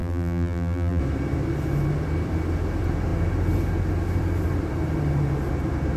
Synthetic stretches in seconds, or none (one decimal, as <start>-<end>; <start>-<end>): 0.0-1.0